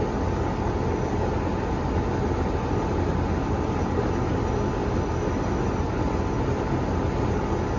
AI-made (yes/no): no